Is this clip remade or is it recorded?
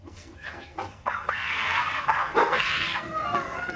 remade